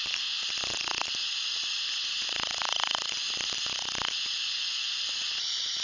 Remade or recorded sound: recorded